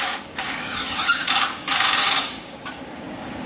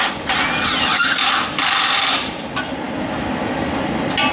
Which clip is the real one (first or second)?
second